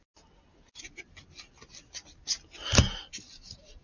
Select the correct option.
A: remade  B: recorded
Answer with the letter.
B